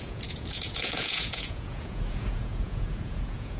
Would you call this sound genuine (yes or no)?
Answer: no